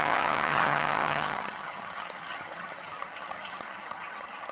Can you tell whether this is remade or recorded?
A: remade